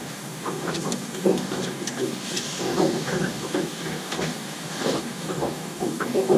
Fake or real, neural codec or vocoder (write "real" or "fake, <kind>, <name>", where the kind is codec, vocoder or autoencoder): fake, codec, DAC